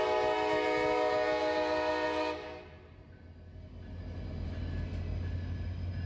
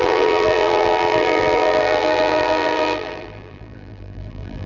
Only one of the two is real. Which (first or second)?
first